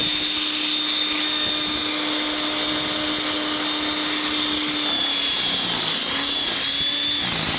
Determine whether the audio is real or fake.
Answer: real